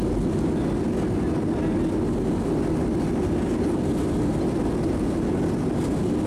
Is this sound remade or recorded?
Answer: recorded